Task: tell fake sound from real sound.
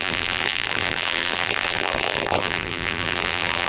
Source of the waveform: fake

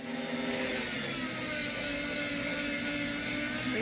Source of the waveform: real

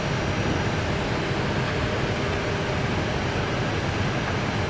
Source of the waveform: real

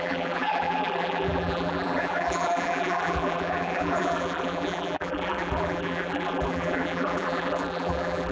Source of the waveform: fake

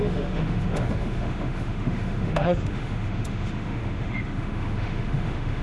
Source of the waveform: fake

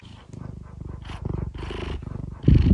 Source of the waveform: real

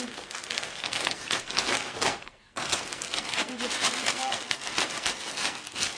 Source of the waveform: fake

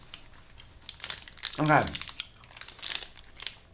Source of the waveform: real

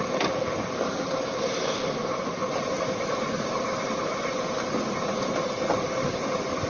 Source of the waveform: real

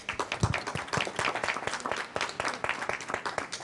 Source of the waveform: real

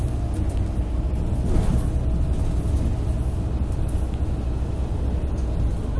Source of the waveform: real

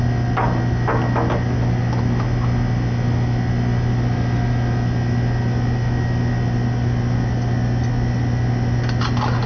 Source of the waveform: real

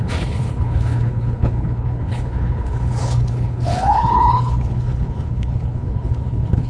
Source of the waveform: fake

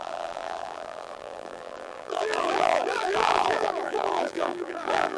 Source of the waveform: fake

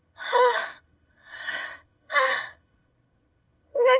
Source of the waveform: fake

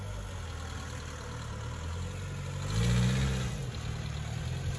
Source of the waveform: real